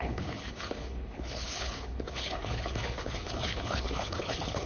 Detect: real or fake fake